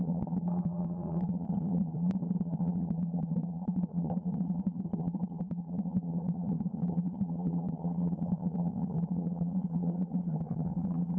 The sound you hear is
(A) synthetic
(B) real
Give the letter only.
A